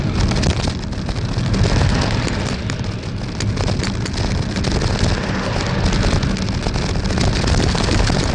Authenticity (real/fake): real